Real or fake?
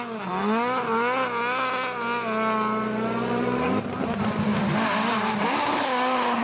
real